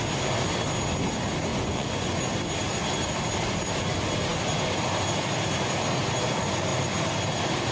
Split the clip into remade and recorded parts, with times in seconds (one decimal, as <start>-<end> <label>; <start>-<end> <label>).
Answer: 0.0-1.5 recorded; 1.5-2.2 remade; 2.2-7.7 recorded